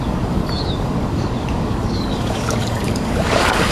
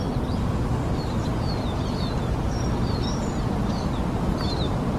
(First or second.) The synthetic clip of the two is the first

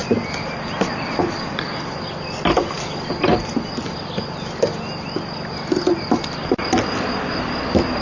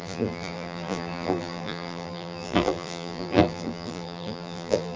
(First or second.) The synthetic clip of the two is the second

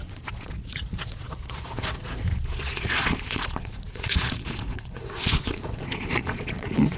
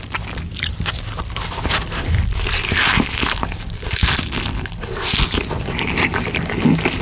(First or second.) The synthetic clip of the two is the first